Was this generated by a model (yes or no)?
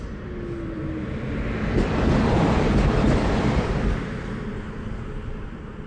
yes